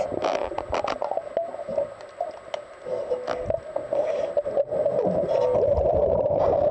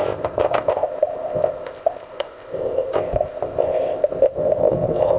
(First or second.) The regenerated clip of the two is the second